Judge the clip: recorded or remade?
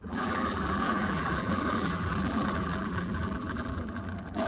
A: remade